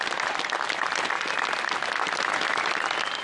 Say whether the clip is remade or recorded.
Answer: recorded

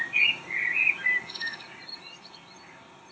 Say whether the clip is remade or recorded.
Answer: recorded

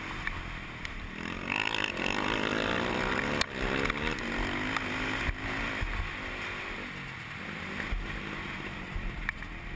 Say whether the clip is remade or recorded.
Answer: recorded